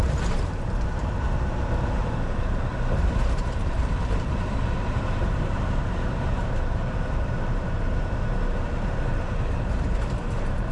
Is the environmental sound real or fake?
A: fake